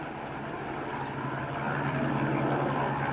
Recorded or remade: recorded